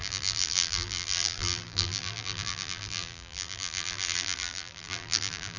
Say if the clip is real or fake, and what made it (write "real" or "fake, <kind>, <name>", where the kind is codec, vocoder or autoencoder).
fake, vocoder, BigVGAN v2